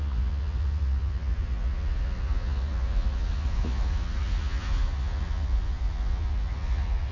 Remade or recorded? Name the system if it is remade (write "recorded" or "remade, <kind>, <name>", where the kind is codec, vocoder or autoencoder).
remade, vocoder, Vocos